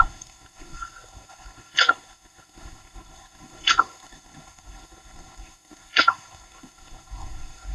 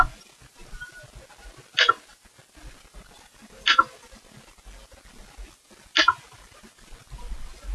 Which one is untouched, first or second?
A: second